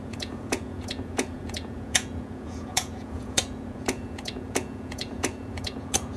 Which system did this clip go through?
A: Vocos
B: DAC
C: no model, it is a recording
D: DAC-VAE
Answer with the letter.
A